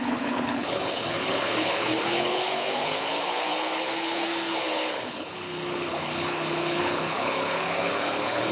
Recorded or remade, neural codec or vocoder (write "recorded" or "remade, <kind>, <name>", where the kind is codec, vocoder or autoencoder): remade, codec, HILCodec